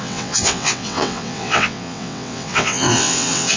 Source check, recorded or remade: remade